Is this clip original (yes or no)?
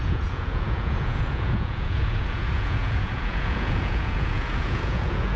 no